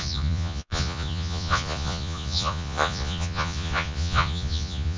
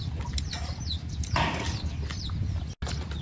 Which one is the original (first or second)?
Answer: second